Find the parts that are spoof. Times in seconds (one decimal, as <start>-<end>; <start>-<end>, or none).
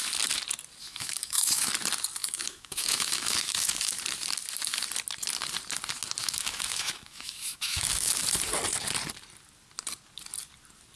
0.8-1.7; 2.2-4.0; 6.2-8.2